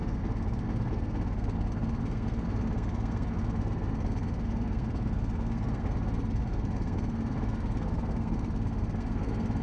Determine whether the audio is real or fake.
fake